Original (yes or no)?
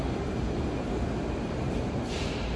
no